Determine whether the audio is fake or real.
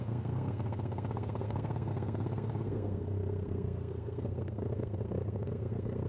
fake